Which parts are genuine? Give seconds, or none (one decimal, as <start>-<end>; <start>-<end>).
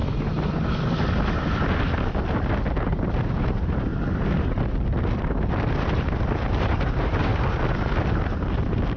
0.0-3.4; 3.9-5.9; 7.3-8.6